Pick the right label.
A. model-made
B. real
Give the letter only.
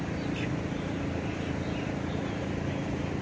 B